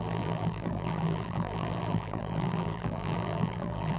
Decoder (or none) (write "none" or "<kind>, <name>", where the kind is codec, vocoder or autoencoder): vocoder, BigVGAN v2